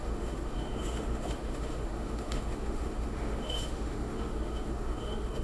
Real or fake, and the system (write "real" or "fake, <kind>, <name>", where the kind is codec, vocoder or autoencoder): fake, autoencoder, DAC-VAE